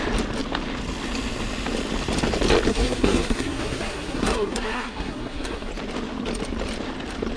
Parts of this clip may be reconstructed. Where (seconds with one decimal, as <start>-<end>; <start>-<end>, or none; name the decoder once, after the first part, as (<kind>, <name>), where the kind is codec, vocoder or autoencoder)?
2.7-5.7 (codec, SNAC)